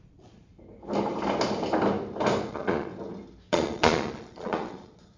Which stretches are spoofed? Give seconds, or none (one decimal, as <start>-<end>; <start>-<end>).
0.0-0.5; 2.5-2.9; 3.5-5.2